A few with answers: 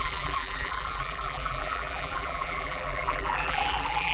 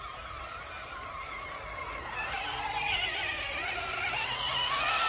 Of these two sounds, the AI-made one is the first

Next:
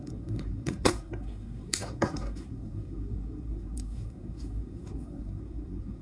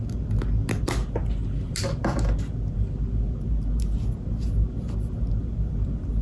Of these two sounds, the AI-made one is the first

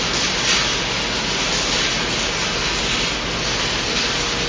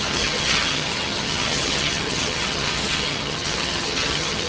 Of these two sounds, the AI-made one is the second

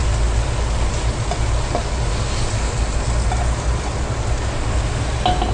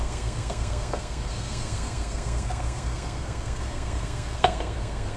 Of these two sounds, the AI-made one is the second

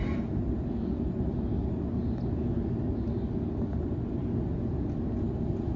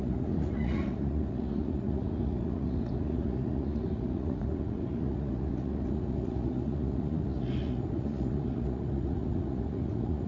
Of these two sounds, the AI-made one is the second